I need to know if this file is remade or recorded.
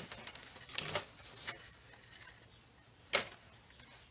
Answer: recorded